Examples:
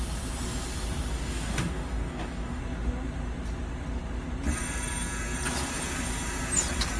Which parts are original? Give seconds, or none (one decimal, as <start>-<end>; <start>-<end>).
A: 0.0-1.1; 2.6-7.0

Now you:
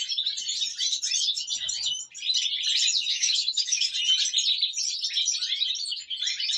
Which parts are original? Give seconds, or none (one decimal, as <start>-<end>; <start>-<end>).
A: 0.0-3.1; 3.9-6.6

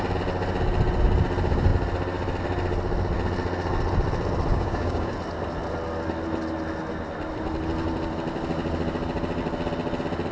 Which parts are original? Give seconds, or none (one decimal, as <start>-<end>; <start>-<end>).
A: 0.0-4.5; 5.1-10.3

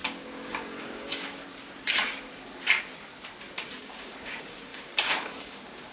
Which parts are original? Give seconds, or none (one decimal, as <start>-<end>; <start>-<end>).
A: 1.4-3.8

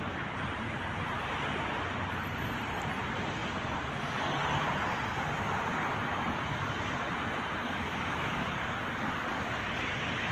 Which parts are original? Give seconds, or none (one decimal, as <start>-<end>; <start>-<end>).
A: 0.0-7.6; 9.8-10.3

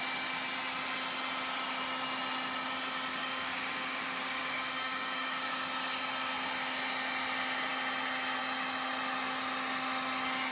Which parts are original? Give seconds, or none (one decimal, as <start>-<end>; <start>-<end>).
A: 0.0-3.1; 5.4-10.5

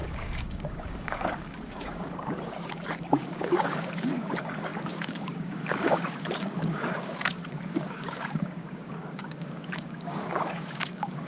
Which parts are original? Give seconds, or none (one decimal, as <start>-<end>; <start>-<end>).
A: none

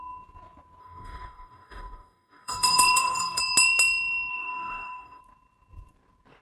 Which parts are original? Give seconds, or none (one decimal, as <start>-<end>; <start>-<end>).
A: 0.0-0.8; 3.4-4.3; 5.2-6.4